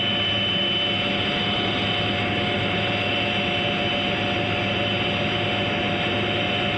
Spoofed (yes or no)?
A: no